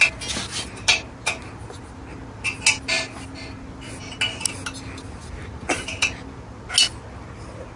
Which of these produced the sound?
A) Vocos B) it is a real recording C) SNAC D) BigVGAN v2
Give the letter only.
B